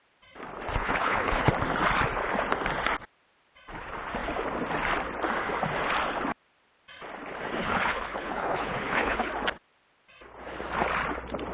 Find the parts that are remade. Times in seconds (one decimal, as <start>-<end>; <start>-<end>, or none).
0.8-1.5; 7.6-9.3